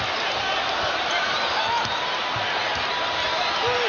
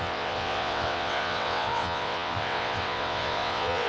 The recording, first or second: first